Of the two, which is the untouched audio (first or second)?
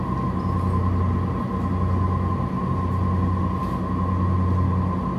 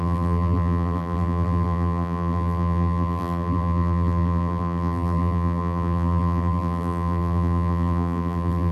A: first